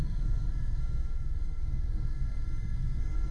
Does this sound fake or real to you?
fake